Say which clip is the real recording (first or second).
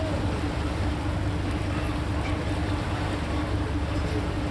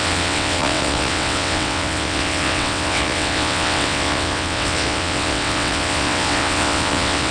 first